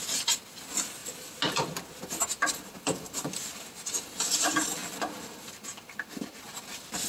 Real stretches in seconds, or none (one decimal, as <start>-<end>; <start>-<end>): 0.0-7.1